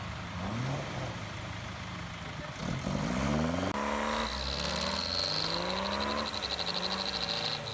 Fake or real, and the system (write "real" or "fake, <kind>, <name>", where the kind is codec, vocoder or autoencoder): real